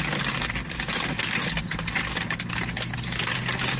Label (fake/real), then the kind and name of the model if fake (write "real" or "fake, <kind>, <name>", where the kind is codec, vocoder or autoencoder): real